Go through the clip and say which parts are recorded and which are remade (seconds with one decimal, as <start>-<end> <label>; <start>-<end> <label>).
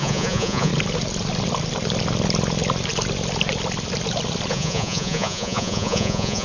0.0-0.7 remade; 0.7-4.5 recorded; 4.5-6.4 remade